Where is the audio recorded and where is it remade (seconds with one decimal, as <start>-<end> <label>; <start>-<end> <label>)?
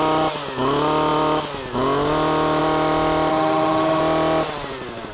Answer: 0.0-3.3 recorded; 3.3-4.0 remade; 4.0-5.1 recorded